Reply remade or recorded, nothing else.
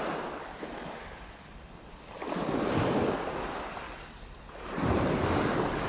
recorded